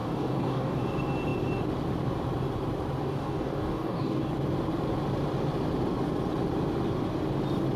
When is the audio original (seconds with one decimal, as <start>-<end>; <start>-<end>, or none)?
0.8-3.0; 4.3-7.8